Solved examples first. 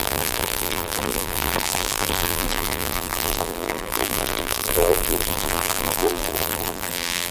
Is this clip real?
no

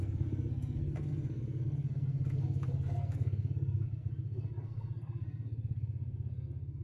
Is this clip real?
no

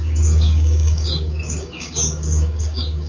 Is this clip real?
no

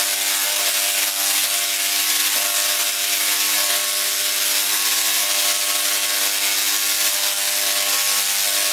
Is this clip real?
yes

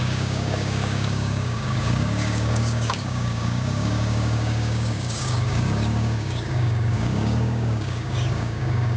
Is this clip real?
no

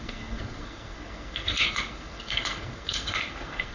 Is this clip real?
no